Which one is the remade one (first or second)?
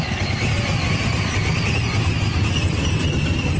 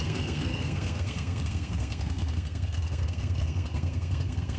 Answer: second